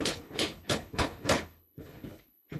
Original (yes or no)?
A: no